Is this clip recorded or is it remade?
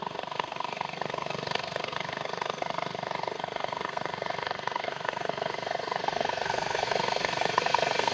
remade